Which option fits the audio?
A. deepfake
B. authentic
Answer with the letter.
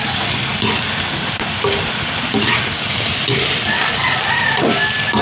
B